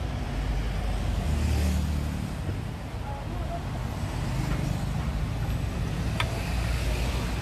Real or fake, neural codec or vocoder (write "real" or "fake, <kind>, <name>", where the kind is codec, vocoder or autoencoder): real